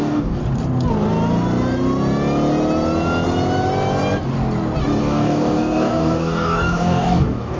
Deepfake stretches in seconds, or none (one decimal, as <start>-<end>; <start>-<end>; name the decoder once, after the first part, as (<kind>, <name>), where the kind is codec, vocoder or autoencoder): 0.0-0.4 (codec, DAC); 5.0-7.6